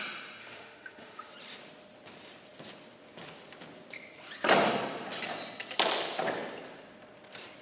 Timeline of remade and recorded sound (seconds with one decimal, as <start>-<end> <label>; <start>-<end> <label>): 0.0-0.4 recorded; 0.4-1.3 remade; 1.3-7.6 recorded

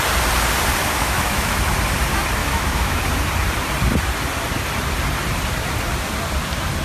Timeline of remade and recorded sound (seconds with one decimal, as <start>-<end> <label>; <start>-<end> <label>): 0.0-0.8 recorded; 0.8-1.5 remade; 1.5-2.4 recorded; 2.4-3.0 remade; 3.0-6.8 recorded

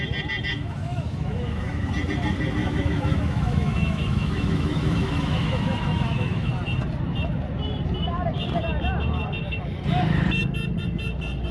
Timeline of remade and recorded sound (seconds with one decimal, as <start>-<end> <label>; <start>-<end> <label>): 0.0-0.5 recorded; 0.5-1.9 remade; 1.9-2.6 recorded; 2.6-6.5 remade; 6.5-11.5 recorded